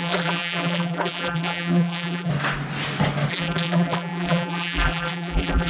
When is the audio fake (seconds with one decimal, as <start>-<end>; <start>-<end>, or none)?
0.0-2.3; 3.3-5.7